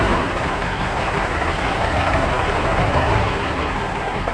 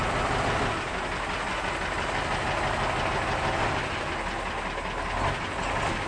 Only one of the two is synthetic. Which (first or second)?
first